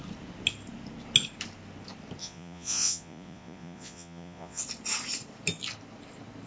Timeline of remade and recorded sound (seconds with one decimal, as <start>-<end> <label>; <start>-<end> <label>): 0.0-2.2 recorded; 2.2-4.6 remade; 4.6-6.5 recorded